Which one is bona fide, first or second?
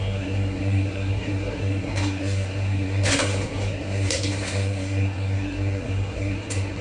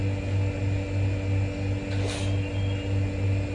second